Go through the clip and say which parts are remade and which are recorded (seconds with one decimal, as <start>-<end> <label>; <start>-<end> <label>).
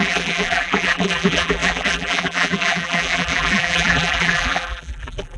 0.0-5.4 remade